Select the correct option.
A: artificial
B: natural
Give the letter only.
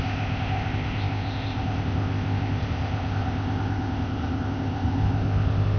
A